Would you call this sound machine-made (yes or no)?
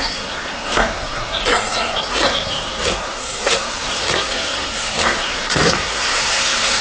yes